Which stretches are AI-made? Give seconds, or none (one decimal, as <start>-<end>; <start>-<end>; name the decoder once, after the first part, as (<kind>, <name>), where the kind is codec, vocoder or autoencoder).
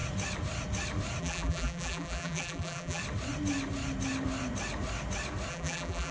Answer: 1.2-3.0 (vocoder, BigVGAN v2); 5.5-6.1